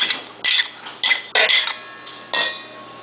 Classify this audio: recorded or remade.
recorded